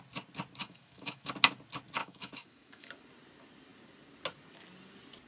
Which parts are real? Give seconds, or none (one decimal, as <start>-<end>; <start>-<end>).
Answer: 0.0-0.6; 1.3-2.0; 2.9-5.3